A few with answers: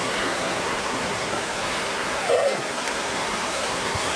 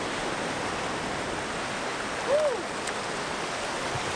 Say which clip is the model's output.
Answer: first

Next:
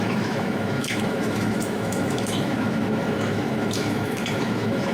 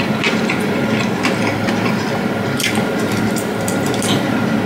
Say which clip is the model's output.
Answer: first